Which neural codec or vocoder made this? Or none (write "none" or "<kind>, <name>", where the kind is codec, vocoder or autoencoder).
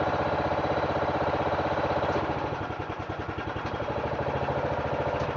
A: none